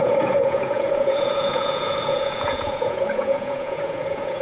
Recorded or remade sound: remade